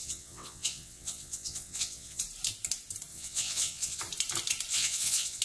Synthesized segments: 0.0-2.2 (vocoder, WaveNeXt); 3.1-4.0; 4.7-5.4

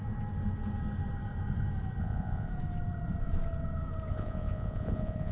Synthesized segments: 2.0-2.5 (vocoder, Vocos); 4.1-5.3

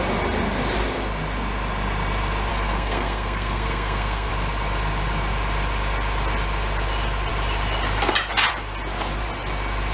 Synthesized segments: 2.5-4.3 (codec, SNAC)

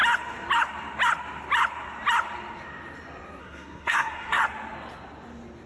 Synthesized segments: 3.4-4.4 (codec, SNAC)

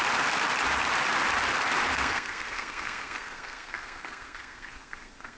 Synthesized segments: 1.9-5.4 (codec, SNAC)

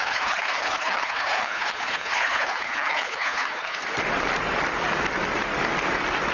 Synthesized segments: 0.0-3.8 (codec, HILCodec)

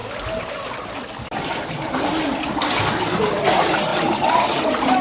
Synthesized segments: 3.9-5.0 (vocoder, BigVGAN v2)

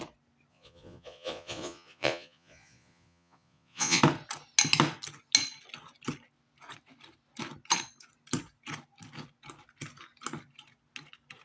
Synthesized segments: 0.5-4.0 (vocoder, Vocos)